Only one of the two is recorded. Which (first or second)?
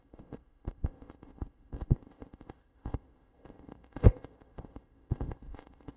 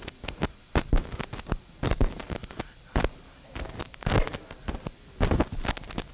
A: second